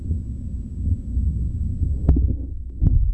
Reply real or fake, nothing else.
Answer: real